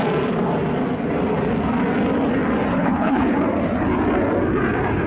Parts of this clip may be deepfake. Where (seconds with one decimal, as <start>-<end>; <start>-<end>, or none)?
2.8-3.3